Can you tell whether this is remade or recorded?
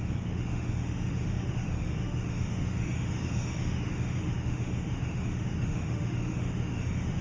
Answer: remade